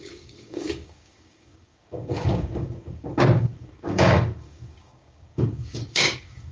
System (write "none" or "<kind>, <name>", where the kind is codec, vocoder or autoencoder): codec, DAC